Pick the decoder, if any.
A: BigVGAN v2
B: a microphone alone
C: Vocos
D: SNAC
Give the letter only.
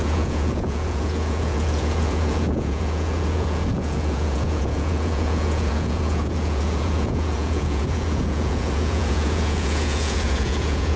C